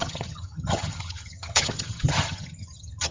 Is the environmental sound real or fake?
fake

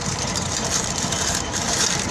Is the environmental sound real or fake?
fake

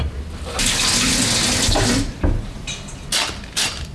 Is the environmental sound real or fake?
real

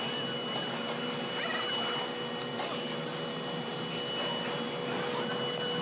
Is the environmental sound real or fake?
real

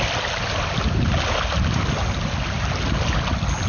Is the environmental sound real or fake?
real